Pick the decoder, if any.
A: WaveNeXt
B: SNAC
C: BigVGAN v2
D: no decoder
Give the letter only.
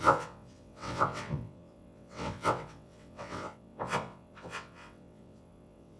A